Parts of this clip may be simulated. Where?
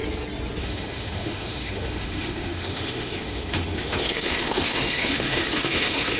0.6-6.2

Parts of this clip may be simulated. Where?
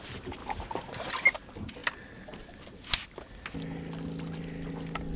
none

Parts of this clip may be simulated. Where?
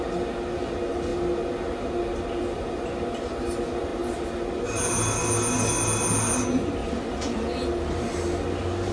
6.8-7.8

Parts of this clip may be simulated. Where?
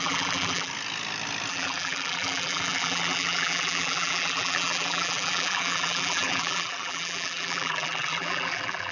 0.0-0.7; 1.5-8.9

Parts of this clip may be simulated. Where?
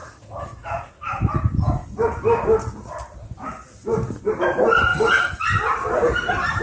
0.0-1.3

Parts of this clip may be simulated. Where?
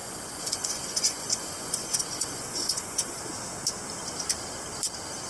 0.0-3.2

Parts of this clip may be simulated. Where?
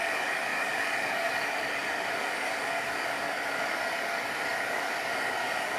0.0-5.8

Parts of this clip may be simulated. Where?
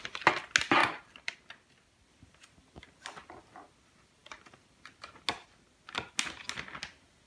0.8-2.1; 4.2-5.2